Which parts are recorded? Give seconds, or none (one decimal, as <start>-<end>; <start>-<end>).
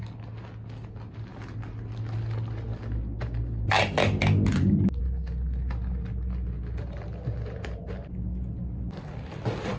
0.0-9.8